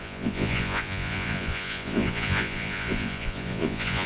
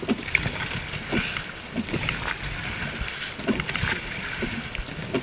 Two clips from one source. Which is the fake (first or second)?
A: first